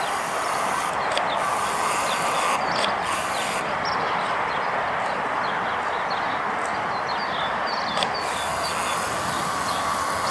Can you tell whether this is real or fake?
real